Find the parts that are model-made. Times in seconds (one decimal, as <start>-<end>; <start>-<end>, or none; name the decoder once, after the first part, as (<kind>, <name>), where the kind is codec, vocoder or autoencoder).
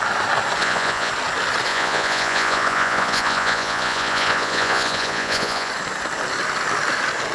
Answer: 0.6-1.1 (vocoder, Vocos); 1.7-5.7